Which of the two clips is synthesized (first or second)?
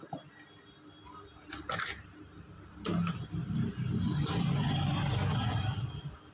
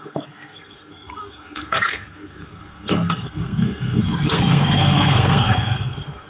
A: second